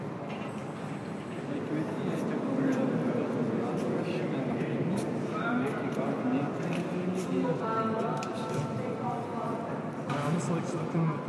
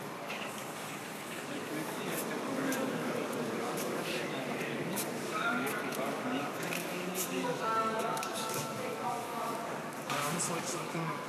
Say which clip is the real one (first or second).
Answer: first